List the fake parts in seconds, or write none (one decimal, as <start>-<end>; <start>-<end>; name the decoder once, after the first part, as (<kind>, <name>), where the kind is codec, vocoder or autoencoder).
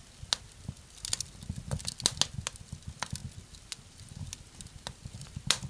none